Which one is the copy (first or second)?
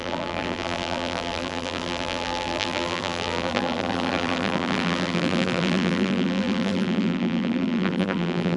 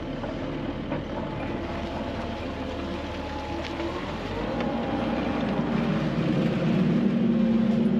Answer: first